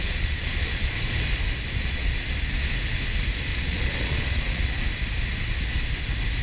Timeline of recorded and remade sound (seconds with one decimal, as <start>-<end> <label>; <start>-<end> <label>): 0.0-0.9 remade; 0.9-1.8 recorded; 1.8-2.3 remade; 2.3-3.5 recorded; 3.5-4.7 remade; 4.7-6.4 recorded